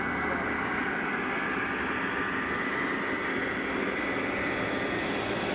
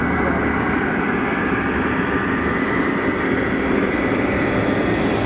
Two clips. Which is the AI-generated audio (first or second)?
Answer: second